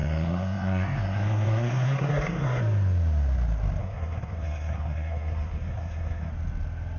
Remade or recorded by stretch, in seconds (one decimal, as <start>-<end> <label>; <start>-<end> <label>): 0.0-2.6 remade; 2.6-3.8 recorded; 3.8-6.3 remade; 6.3-7.0 recorded